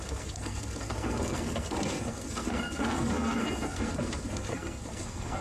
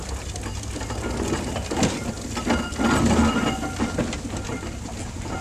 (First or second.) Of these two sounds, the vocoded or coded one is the first